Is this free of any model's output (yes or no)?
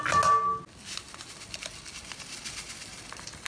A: yes